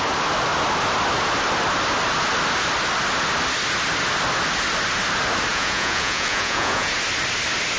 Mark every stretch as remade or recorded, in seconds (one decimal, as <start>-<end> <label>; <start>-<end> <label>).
0.0-5.5 recorded; 5.5-6.9 remade; 6.9-7.8 recorded

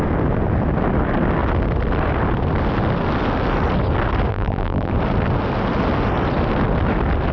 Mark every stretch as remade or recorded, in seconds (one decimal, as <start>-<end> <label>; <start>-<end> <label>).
0.0-4.3 recorded; 4.3-4.9 remade; 4.9-7.3 recorded

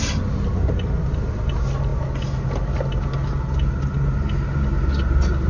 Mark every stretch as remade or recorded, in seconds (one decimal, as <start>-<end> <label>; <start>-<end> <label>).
0.0-5.5 recorded

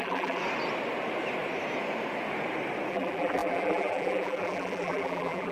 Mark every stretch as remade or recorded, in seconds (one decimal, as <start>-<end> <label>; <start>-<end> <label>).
0.0-0.4 remade; 0.4-2.9 recorded; 2.9-5.5 remade

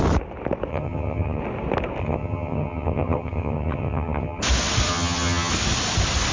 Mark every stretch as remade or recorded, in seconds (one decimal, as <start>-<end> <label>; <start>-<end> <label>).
0.0-0.7 recorded; 0.7-1.4 remade; 1.4-2.0 recorded; 2.0-4.4 remade; 4.4-4.9 recorded; 4.9-5.5 remade; 5.5-6.3 recorded